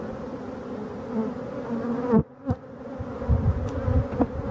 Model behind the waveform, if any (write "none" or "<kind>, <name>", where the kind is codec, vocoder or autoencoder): none